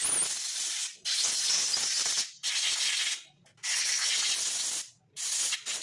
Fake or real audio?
real